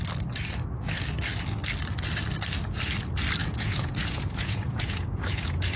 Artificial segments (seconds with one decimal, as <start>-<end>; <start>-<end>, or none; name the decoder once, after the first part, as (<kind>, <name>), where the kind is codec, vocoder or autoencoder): 3.4-5.8 (vocoder, Vocos)